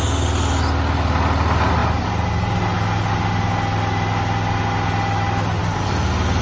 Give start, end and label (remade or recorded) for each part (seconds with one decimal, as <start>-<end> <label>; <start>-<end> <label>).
0.0-6.4 recorded